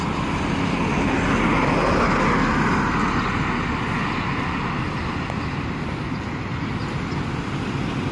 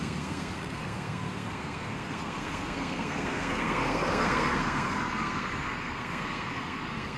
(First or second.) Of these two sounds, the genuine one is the first